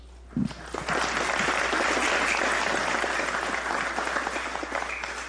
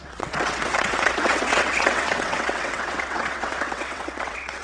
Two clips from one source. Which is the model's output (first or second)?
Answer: second